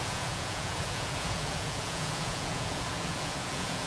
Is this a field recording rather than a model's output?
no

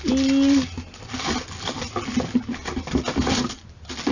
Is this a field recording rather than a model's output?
yes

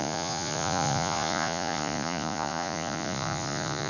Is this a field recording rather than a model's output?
no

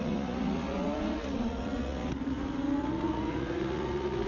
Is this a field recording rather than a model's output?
no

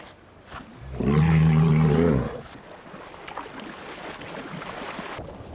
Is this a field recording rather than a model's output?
yes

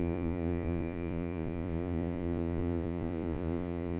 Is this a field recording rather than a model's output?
no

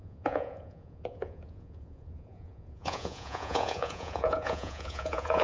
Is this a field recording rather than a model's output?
no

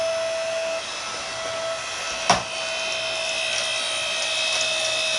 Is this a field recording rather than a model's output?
yes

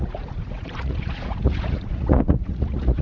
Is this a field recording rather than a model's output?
no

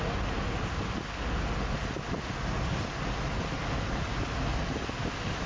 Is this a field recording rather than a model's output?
yes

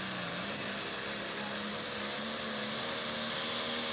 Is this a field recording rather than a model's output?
yes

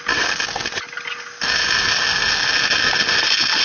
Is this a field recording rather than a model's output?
yes